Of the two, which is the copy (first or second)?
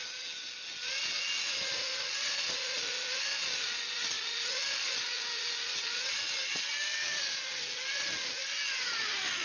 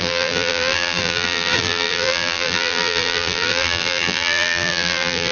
second